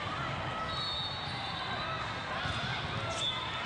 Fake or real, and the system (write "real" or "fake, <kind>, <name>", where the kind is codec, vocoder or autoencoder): real